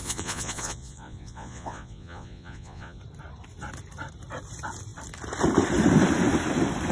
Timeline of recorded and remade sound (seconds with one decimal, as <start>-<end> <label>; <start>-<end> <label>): 0.0-3.0 remade; 3.0-6.9 recorded